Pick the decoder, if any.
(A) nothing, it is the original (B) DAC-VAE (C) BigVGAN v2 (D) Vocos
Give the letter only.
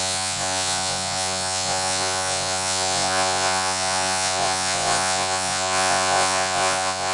D